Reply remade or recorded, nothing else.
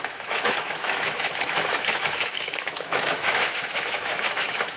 remade